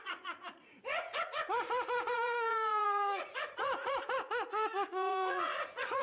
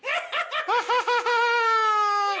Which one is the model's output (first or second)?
first